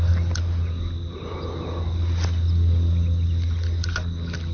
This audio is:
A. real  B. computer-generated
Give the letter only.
A